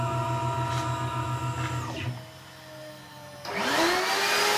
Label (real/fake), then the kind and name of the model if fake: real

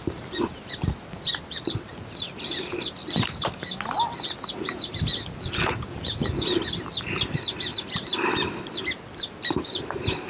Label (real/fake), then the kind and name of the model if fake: real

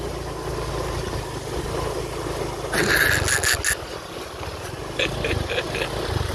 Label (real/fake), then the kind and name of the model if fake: real